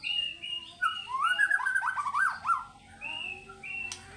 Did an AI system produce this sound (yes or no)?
no